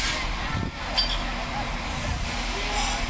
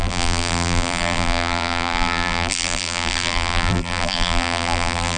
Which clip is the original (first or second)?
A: first